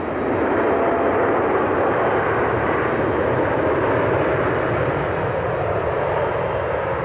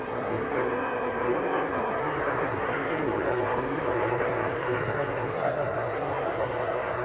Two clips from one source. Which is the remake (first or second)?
second